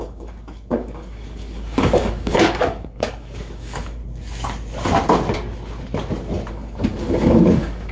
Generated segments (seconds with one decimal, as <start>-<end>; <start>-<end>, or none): 0.0-4.0; 6.5-7.9